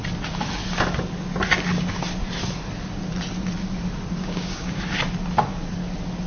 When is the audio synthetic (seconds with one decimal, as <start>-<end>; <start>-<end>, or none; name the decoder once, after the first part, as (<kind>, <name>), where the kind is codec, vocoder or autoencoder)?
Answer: 4.2-4.8 (codec, DAC)

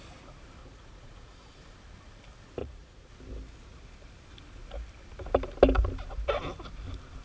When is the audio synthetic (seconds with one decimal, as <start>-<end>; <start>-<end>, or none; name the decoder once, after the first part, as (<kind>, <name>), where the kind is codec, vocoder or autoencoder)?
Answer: 0.6-1.6 (vocoder, Vocos); 2.6-3.1

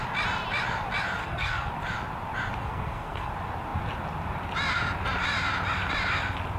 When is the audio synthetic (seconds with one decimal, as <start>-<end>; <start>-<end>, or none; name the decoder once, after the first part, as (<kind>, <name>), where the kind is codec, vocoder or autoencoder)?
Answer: 1.2-1.7 (codec, SNAC); 2.6-3.3

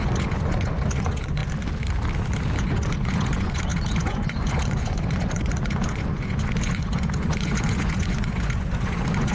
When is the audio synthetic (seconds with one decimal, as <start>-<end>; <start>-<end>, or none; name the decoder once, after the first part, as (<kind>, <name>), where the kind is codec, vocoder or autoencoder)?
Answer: 0.0-1.4 (vocoder, Vocos); 2.6-9.3